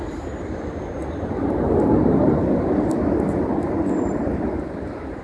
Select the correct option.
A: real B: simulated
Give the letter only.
A